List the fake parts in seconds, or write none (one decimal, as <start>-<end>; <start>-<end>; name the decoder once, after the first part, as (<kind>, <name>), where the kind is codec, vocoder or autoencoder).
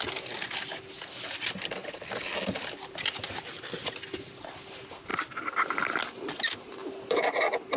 none